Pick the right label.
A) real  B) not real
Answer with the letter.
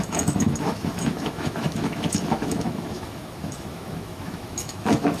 B